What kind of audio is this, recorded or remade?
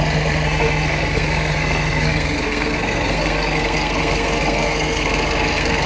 remade